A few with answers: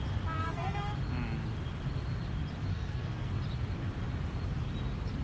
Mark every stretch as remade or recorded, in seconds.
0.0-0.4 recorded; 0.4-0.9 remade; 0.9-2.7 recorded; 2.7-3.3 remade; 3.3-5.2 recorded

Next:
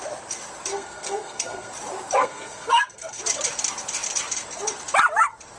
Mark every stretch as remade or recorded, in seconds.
0.0-0.7 recorded; 0.7-1.7 remade; 1.7-2.2 recorded; 2.2-3.2 remade; 3.2-5.6 recorded

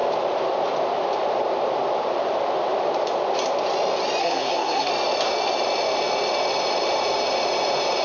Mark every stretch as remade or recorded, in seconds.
0.0-4.2 recorded; 4.2-4.9 remade; 4.9-8.0 recorded

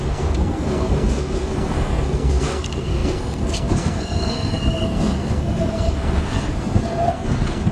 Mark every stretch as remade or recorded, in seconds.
0.0-7.7 remade

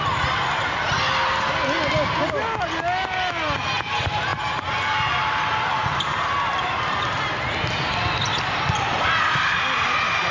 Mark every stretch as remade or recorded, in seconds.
0.0-10.3 recorded

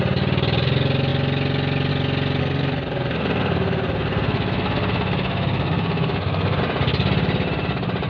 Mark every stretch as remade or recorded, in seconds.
0.0-2.4 recorded; 2.4-6.6 remade; 6.6-8.1 recorded